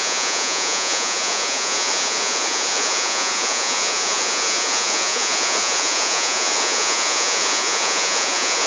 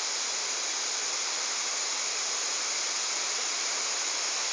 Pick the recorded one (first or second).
second